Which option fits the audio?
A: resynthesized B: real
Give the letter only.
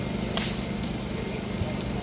B